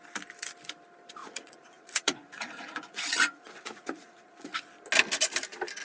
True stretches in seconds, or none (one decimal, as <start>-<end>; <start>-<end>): 0.0-1.2; 4.7-5.8